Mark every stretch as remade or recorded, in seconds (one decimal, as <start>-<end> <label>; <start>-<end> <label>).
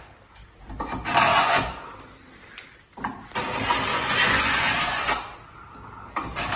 0.0-1.3 recorded; 1.3-1.8 remade; 1.8-3.9 recorded; 3.9-5.1 remade; 5.1-6.6 recorded